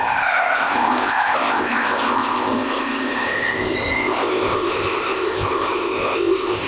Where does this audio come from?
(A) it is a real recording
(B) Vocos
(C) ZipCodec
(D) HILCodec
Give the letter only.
C